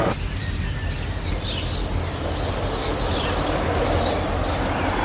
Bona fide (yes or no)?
yes